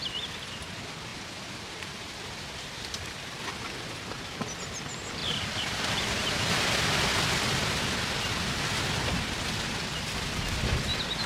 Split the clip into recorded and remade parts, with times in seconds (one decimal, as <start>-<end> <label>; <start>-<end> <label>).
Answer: 0.0-1.1 recorded; 1.1-2.1 remade; 2.1-5.2 recorded; 5.2-6.3 remade; 6.3-11.3 recorded

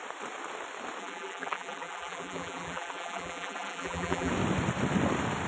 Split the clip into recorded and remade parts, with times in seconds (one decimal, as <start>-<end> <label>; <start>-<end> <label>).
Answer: 0.0-1.0 recorded; 1.0-4.3 remade; 4.3-5.5 recorded

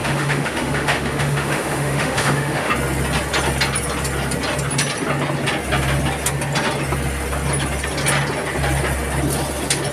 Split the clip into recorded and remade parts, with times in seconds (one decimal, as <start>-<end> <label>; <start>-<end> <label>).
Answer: 0.0-2.7 remade; 2.7-9.9 recorded

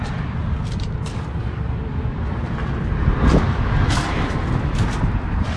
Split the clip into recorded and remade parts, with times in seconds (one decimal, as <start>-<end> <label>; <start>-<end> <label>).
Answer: 0.0-5.6 remade

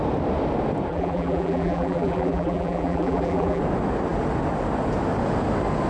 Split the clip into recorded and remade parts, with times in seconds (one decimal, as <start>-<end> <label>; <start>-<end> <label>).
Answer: 0.0-0.9 recorded; 0.9-3.6 remade; 3.6-5.9 recorded